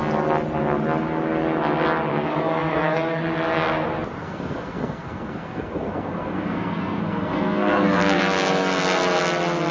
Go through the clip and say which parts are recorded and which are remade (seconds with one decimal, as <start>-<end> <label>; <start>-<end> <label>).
0.0-2.1 recorded; 2.1-3.2 remade; 3.2-4.2 recorded; 4.2-8.2 remade; 8.2-9.7 recorded